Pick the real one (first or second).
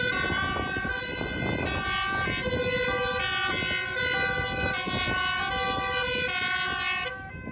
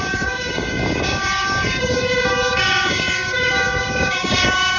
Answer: first